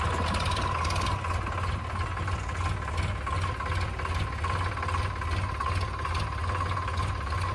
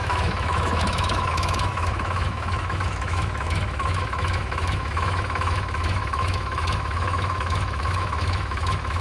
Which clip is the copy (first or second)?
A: second